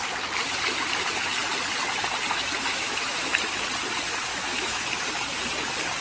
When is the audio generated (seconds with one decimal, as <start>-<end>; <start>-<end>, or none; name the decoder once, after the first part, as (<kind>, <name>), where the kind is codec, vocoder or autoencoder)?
2.7-3.3 (autoencoder, DAC-VAE); 4.3-4.9